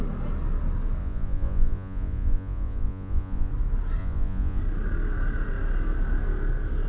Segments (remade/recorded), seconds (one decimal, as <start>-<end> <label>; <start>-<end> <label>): 0.0-1.0 recorded; 1.0-3.5 remade; 3.5-4.0 recorded; 4.0-4.6 remade; 4.6-6.9 recorded